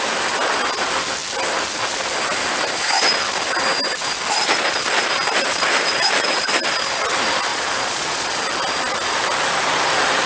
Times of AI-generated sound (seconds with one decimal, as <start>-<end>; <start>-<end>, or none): 7.5-8.3